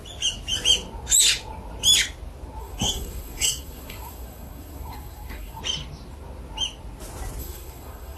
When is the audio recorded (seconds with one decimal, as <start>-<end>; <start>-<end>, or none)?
0.0-2.6; 5.6-7.4